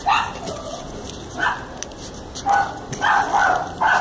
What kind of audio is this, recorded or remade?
recorded